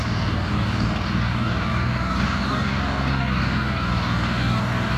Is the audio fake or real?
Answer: fake